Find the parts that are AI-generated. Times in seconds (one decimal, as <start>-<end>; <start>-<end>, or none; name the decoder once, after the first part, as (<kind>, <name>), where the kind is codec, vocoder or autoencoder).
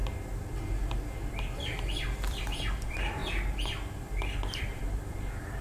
1.4-3.2 (vocoder, BigVGAN v2); 4.6-5.6